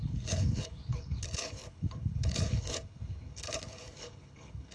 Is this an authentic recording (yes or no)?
no